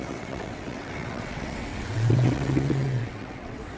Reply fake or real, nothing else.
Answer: fake